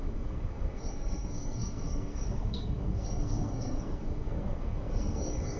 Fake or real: fake